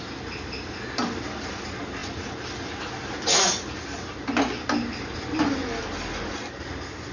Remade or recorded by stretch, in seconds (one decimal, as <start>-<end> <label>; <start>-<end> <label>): 0.0-7.1 recorded